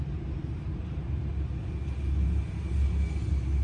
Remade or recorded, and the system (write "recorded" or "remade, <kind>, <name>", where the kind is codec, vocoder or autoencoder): recorded